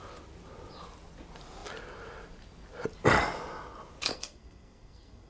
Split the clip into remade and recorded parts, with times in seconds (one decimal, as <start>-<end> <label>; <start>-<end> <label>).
0.0-4.1 recorded; 4.1-5.3 remade